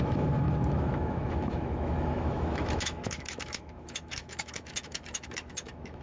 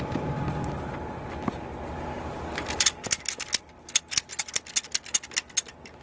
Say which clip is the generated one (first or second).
first